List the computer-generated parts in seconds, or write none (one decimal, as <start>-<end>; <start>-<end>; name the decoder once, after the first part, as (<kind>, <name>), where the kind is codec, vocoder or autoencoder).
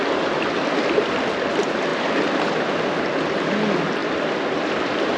none